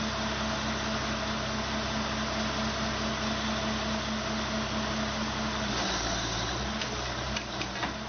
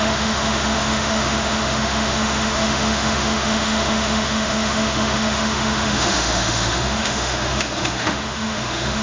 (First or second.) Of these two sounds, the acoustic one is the first